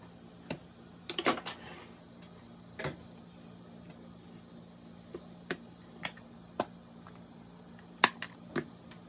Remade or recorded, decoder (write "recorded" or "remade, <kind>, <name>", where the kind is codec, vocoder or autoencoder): recorded